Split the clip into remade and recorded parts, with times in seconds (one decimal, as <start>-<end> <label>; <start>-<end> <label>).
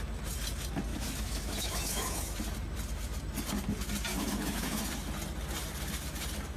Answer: 0.0-0.9 recorded; 0.9-2.4 remade; 2.4-4.1 recorded; 4.1-4.8 remade; 4.8-6.6 recorded